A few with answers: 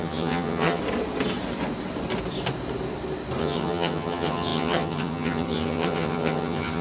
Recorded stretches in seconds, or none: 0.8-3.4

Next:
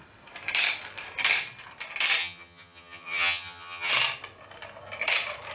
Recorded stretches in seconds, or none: 0.0-2.2; 3.9-5.5

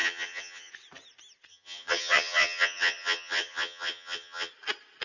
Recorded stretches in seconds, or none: 0.7-1.5; 4.5-5.0